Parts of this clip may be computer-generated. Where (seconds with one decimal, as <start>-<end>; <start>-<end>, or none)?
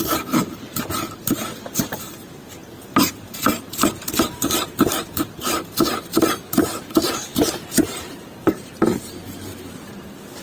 0.0-10.4